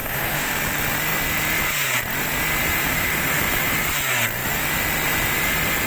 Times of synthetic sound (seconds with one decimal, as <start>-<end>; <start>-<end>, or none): 0.0-0.5; 2.8-3.7